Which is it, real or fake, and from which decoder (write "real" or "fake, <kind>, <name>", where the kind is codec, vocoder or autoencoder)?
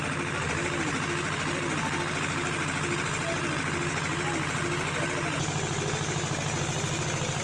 real